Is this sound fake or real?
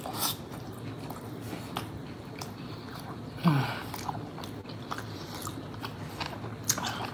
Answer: real